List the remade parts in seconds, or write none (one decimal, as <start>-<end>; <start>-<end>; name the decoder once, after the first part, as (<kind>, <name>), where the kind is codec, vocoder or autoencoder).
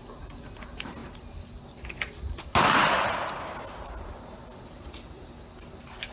none